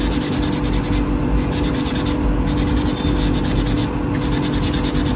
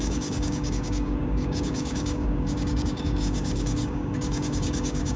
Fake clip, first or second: second